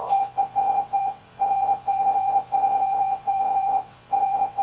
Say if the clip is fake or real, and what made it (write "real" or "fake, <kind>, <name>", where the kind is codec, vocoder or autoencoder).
fake, vocoder, WaveNeXt